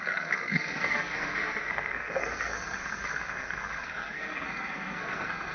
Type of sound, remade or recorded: remade